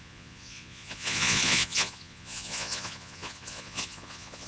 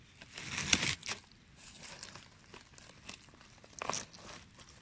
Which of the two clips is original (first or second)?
second